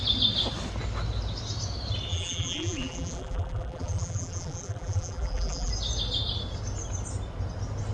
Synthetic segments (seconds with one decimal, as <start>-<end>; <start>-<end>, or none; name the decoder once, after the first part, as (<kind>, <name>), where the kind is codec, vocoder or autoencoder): 2.1-5.7 (vocoder, BigVGAN v2)